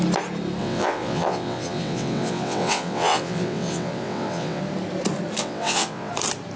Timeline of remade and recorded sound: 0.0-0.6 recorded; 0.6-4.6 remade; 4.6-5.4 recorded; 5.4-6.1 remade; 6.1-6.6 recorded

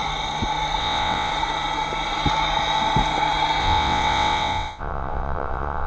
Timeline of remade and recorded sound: 0.0-0.8 recorded; 0.8-1.3 remade; 1.3-3.6 recorded; 3.6-5.9 remade

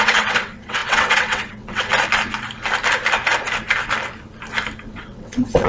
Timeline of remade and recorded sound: 0.0-1.9 remade; 1.9-4.9 recorded; 4.9-5.7 remade

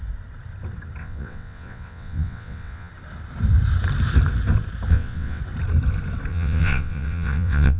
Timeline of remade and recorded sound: 0.0-1.0 recorded; 1.0-2.9 remade; 2.9-4.9 recorded; 4.9-5.4 remade; 5.4-6.3 recorded; 6.3-7.8 remade